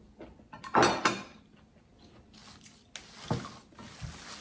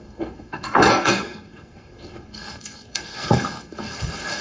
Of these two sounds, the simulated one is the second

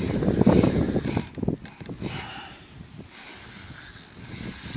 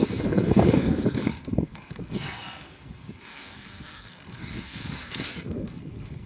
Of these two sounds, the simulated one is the second